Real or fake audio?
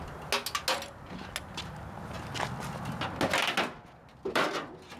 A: real